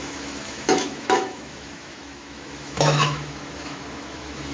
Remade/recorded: remade